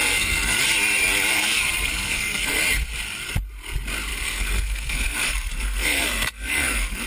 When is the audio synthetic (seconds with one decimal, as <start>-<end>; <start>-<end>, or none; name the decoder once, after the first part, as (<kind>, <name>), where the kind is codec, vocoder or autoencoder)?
0.0-0.6 (codec, SNAC); 1.3-2.6; 4.1-7.1